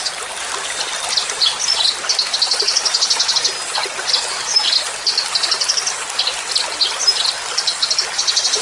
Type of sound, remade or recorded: recorded